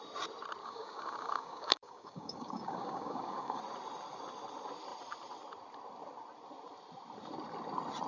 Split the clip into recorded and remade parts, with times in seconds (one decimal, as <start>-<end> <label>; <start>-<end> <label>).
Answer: 0.0-0.6 recorded; 0.6-3.6 remade; 3.6-8.1 recorded

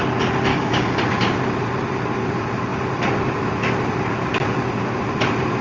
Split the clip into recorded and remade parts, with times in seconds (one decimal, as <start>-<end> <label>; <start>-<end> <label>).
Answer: 0.0-0.5 recorded; 0.5-1.0 remade; 1.0-5.6 recorded

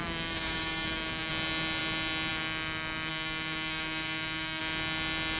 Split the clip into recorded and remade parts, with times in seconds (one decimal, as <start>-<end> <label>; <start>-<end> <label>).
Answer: 0.0-1.3 remade; 1.3-3.1 recorded; 3.1-4.6 remade; 4.6-5.4 recorded

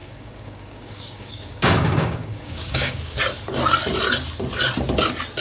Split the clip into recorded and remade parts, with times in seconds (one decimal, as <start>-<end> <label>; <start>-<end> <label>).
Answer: 0.0-3.2 remade; 3.2-5.4 recorded

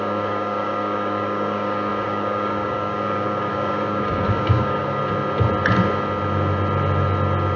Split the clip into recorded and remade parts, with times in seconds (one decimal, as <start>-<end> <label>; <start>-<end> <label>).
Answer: 0.0-5.0 remade; 5.0-7.6 recorded

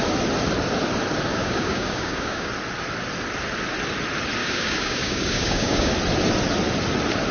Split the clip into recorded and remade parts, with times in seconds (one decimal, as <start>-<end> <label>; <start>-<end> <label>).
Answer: 0.0-1.3 recorded; 1.3-2.5 remade; 2.5-4.4 recorded; 4.4-5.9 remade; 5.9-7.3 recorded

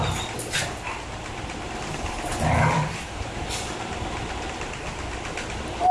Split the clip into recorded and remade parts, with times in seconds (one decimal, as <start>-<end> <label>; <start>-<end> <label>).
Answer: 0.0-5.9 recorded

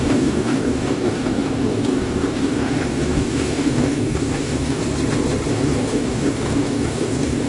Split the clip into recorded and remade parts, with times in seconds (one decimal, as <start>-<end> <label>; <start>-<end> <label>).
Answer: 0.0-4.8 remade; 4.8-5.5 recorded; 5.5-7.5 remade